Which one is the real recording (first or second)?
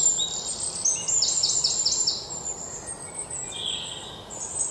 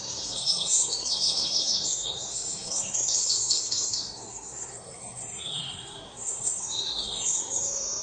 first